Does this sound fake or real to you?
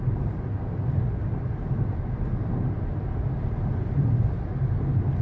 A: real